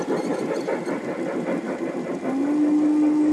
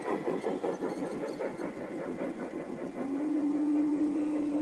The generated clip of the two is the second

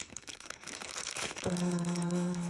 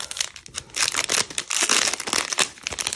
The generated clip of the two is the first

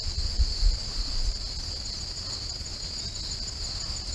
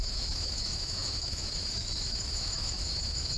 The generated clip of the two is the second